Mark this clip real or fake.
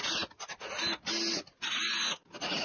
real